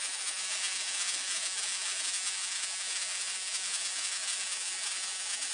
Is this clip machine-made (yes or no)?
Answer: yes